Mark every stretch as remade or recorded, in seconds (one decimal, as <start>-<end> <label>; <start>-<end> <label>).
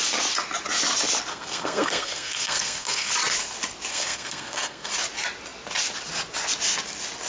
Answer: 0.0-1.3 recorded; 1.3-3.1 remade; 3.1-3.9 recorded; 3.9-4.9 remade; 4.9-7.3 recorded